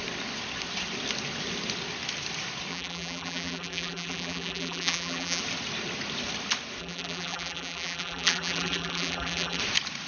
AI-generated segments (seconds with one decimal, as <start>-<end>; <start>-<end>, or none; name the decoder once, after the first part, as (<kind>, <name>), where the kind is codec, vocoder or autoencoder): 2.7-5.4 (vocoder, BigVGAN v2); 6.8-9.6

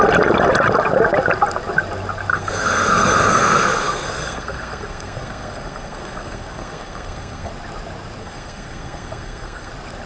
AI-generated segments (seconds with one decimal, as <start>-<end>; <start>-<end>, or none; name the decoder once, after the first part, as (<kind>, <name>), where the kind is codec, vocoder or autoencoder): 2.3-7.5 (codec, SNAC); 8.2-9.7

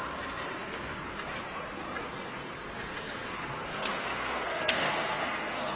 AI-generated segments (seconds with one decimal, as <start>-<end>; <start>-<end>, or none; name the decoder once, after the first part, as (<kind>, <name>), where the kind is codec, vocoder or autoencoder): 3.3-5.8 (codec, SNAC)

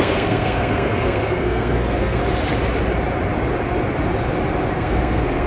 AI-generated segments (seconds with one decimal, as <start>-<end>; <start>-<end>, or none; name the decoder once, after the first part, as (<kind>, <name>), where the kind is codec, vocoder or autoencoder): 0.0-2.2 (codec, SNAC); 4.7-5.5

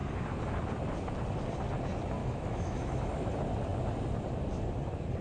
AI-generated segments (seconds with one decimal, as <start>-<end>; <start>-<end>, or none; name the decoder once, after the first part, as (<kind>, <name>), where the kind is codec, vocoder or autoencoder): 2.2-3.3 (autoencoder, DAC-VAE)

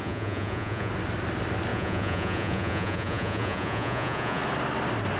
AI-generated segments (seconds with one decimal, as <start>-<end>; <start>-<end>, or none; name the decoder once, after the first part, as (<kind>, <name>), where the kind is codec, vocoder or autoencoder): 0.0-0.9 (vocoder, Vocos); 1.7-4.4

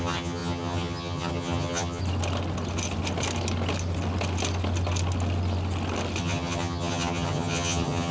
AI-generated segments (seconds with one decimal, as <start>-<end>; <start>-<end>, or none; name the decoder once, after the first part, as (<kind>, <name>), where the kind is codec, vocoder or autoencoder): 0.0-2.0 (vocoder, HiFi-GAN); 6.2-8.1